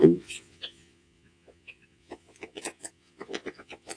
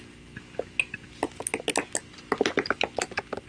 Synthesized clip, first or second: first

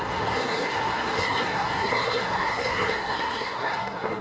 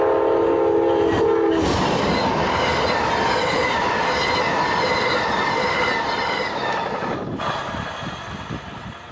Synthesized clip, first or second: first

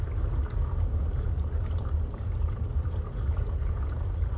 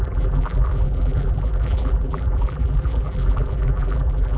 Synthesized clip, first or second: second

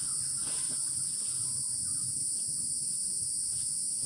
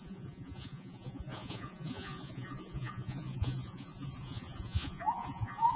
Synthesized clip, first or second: second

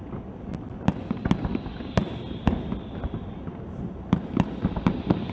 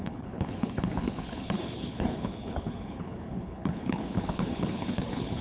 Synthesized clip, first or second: second